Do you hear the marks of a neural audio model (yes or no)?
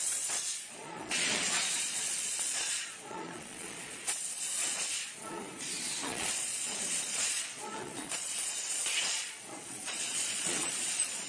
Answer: yes